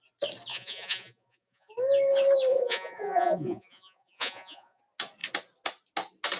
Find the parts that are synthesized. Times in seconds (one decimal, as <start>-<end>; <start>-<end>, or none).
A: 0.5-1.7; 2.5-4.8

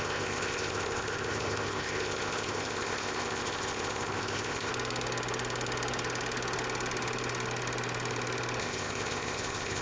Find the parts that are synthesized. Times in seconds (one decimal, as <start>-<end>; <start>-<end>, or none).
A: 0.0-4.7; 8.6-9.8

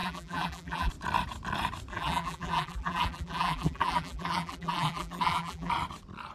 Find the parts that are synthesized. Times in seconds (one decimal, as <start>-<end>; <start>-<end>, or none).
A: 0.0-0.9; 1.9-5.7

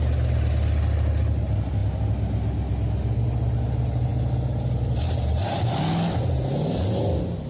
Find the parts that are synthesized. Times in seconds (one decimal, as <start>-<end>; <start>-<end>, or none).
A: none

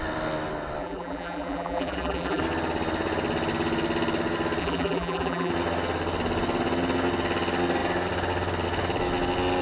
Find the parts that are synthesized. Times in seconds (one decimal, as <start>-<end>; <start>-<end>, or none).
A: 0.8-2.4; 4.6-5.5

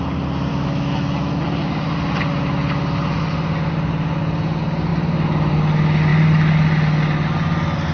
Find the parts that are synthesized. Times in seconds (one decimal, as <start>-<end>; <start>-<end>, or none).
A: 0.5-1.4

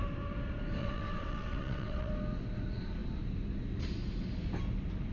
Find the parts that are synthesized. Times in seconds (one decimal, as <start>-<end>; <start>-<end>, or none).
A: 0.8-2.1